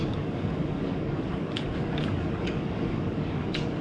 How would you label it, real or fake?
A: fake